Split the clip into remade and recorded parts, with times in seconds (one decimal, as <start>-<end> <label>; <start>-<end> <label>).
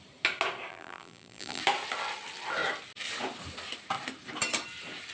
0.0-0.7 recorded; 0.7-1.6 remade; 1.6-5.1 recorded